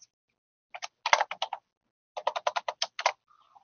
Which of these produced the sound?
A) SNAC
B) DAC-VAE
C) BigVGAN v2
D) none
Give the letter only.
D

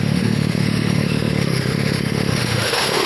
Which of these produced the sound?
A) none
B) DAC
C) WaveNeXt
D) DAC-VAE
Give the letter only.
D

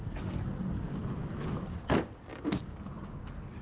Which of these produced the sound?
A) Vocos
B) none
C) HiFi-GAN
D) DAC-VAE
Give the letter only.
B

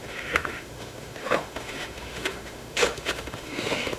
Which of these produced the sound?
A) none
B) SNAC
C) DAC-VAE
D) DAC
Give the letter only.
C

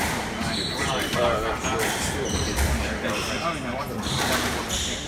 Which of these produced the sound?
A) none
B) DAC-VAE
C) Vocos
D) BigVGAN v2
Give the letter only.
A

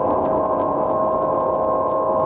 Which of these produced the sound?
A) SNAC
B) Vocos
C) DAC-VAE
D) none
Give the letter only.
D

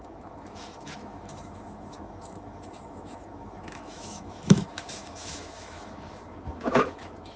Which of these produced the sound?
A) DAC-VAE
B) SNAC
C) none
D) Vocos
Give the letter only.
A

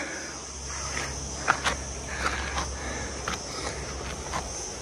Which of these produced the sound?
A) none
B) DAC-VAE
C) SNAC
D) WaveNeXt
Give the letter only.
A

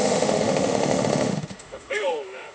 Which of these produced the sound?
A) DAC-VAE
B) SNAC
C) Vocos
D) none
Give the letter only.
A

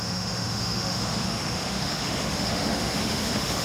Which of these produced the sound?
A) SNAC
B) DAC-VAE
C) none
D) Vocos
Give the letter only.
B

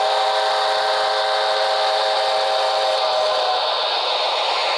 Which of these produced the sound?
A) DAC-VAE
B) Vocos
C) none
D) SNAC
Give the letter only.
C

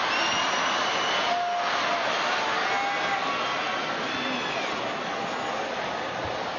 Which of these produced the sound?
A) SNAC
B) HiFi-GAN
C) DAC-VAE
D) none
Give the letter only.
D